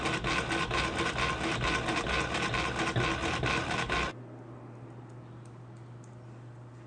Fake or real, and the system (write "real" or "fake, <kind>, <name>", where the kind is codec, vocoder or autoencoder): real